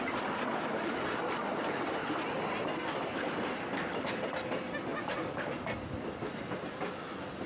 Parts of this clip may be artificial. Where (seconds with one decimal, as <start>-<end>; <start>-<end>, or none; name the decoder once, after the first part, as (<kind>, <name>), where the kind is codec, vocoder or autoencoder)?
none